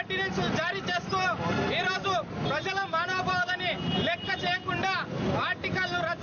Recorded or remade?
recorded